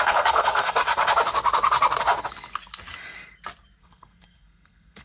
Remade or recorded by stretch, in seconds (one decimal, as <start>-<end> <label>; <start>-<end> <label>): 0.0-0.8 remade; 0.8-3.8 recorded; 3.8-5.0 remade